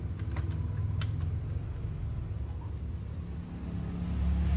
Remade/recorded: recorded